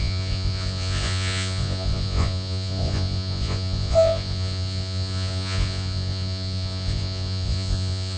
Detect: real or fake fake